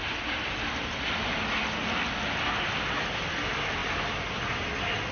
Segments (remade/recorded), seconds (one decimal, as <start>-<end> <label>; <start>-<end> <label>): 0.0-5.1 recorded